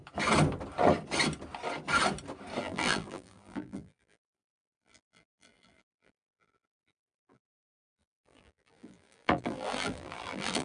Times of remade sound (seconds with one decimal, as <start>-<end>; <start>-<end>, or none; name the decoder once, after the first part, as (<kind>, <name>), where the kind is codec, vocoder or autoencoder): 2.6-10.6 (vocoder, BigVGAN v2)